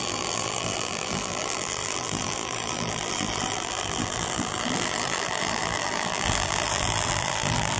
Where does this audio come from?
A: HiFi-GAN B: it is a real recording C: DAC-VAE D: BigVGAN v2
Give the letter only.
D